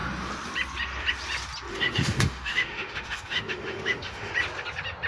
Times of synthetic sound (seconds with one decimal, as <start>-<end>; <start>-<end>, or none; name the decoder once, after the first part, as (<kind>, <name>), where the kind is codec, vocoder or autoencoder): 1.7-4.3 (autoencoder, DAC-VAE)